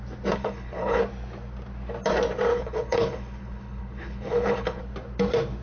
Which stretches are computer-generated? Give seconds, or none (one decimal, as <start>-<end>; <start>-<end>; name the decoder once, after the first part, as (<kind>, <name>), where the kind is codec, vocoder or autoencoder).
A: 0.4-1.0 (codec, HILCodec); 2.5-4.8